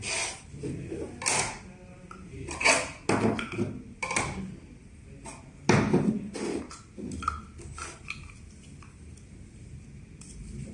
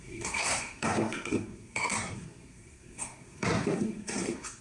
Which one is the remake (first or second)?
second